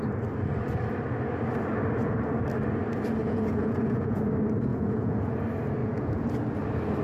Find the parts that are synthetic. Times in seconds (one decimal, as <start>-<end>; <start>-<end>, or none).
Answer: 3.2-4.2; 4.7-5.3; 5.8-6.3